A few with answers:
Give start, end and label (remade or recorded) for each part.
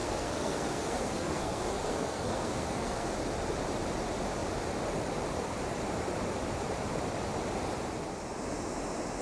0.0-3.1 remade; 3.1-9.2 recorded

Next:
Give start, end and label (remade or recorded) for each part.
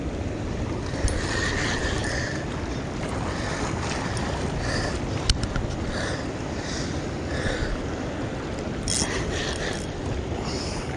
0.0-11.0 recorded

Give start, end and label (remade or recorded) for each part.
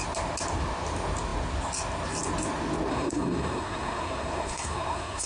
0.0-2.9 recorded; 2.9-5.3 remade